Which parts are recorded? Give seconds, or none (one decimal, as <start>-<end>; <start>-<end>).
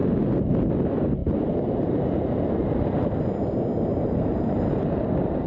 0.0-1.2; 3.5-3.9; 5.1-5.5